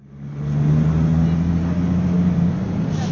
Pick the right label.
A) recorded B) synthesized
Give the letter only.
A